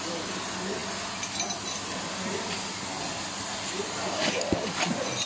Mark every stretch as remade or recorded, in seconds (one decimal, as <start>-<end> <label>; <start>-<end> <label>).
0.0-5.3 recorded